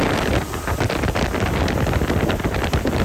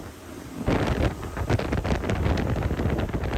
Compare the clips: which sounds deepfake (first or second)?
first